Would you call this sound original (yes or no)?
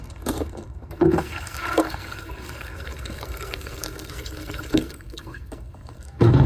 no